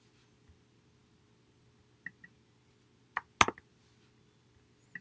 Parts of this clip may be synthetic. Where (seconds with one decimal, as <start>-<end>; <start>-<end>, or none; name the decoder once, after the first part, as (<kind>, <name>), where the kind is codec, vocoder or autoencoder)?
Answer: none